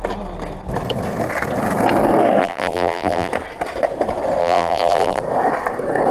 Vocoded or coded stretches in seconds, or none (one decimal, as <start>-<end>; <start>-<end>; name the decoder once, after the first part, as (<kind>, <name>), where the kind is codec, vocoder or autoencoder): 2.4-3.3 (vocoder, BigVGAN v2); 4.4-5.2